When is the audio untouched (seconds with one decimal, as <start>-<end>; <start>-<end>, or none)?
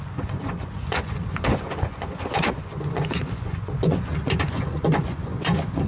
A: none